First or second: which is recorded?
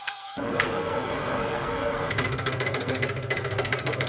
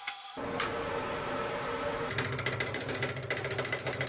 second